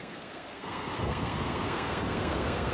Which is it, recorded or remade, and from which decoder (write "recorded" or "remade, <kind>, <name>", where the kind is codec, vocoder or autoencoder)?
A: remade, codec, SNAC